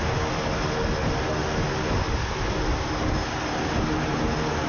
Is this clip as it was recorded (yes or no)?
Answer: yes